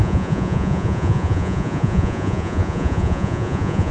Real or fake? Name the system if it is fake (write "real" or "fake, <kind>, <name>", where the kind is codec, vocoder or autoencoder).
fake, vocoder, Vocos